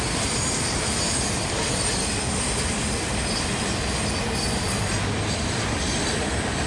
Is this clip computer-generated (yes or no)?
no